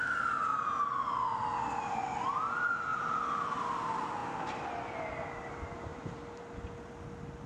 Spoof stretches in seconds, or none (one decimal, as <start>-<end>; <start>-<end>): 5.9-6.4